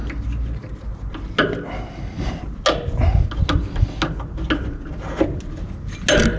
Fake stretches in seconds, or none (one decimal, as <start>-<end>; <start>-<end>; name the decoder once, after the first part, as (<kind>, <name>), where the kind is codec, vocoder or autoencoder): none